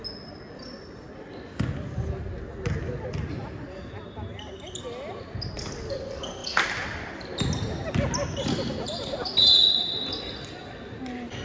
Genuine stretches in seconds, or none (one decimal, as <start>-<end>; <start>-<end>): 0.0-11.4